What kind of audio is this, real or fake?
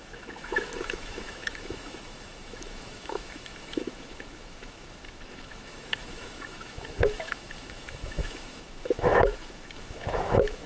fake